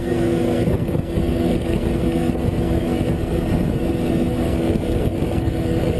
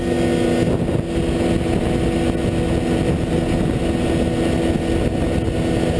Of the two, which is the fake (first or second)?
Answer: first